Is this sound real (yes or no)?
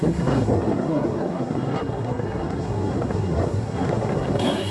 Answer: no